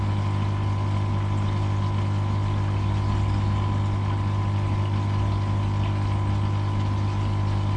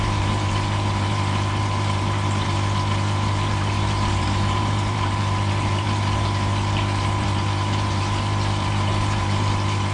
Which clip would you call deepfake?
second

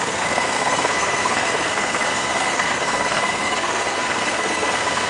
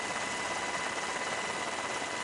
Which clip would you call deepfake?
first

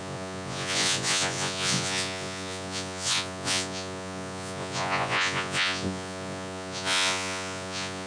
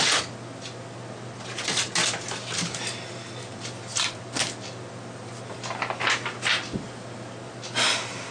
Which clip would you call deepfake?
first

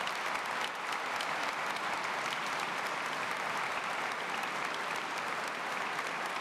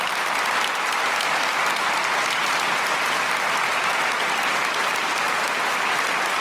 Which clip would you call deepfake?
first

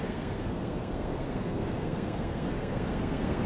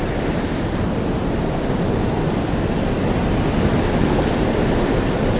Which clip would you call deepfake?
first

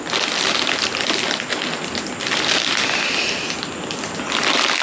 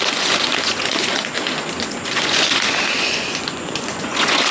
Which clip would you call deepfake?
second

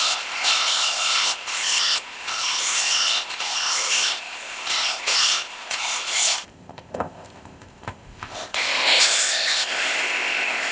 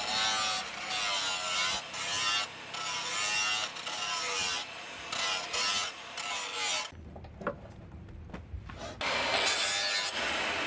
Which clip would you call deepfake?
first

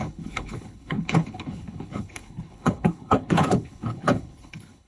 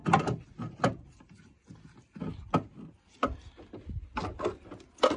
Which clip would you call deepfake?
first